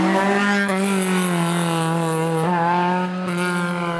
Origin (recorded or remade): recorded